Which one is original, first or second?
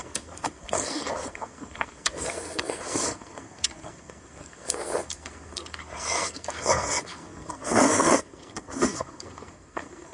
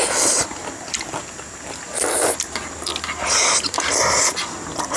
second